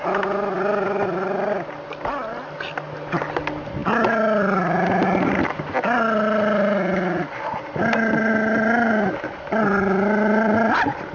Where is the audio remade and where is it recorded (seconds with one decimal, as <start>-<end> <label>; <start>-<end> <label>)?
0.0-11.1 recorded